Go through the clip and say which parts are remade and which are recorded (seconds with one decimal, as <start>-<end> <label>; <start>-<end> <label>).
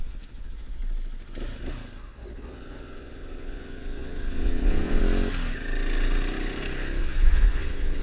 0.0-0.8 remade; 0.8-2.0 recorded; 2.0-5.0 remade; 5.0-7.0 recorded; 7.0-8.0 remade